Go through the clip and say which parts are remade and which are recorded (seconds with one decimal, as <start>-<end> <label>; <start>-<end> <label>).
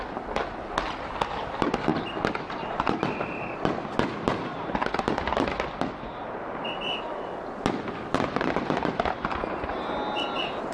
0.0-10.7 recorded